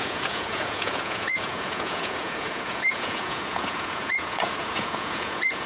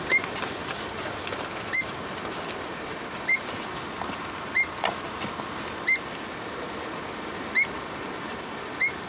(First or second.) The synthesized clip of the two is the first